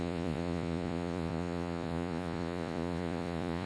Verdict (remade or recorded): remade